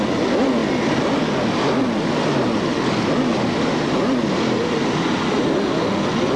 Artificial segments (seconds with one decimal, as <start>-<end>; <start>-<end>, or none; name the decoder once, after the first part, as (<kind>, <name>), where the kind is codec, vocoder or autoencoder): none